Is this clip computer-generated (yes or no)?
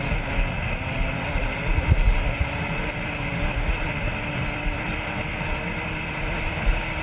no